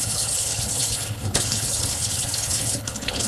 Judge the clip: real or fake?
fake